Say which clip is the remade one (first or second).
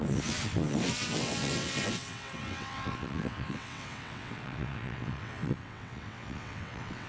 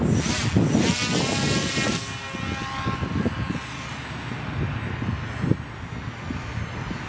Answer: first